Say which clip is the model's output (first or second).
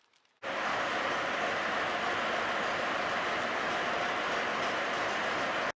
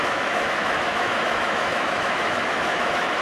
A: second